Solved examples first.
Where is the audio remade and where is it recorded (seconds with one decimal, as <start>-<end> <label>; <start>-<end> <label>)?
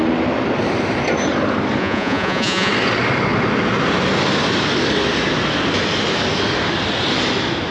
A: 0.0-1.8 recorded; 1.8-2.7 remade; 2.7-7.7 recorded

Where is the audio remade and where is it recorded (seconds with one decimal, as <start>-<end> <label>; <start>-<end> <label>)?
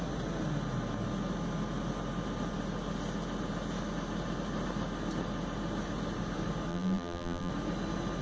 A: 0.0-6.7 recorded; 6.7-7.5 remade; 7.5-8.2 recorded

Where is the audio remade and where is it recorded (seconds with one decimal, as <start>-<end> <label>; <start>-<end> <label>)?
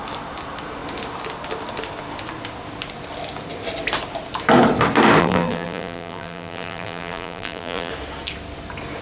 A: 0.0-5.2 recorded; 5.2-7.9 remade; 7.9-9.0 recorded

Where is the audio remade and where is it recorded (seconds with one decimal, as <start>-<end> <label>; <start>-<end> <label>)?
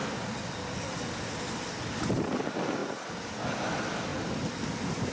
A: 0.0-5.1 recorded